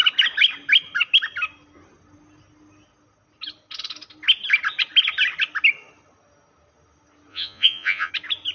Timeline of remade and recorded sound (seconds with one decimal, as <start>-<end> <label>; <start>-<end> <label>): 0.0-7.3 recorded; 7.3-8.1 remade; 8.1-8.5 recorded